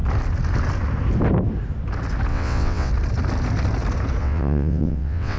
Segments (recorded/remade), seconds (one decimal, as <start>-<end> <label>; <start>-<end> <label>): 0.0-2.3 recorded; 2.3-2.9 remade; 2.9-4.2 recorded; 4.2-5.4 remade